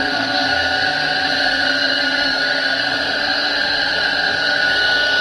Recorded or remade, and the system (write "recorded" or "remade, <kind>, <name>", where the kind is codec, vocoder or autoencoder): remade, codec, SNAC